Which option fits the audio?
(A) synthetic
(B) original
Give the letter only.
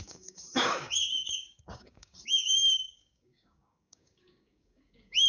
A